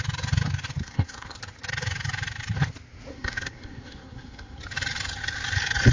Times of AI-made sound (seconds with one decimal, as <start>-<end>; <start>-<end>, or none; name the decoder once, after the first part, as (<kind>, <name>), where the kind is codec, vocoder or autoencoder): 0.8-1.4 (codec, SNAC); 3.1-4.6